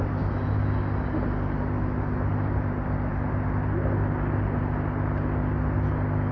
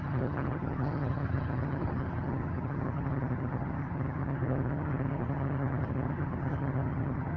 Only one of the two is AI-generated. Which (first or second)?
second